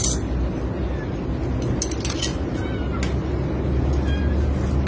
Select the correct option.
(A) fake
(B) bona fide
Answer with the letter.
B